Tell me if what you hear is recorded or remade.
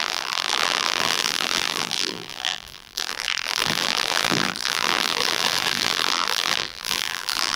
remade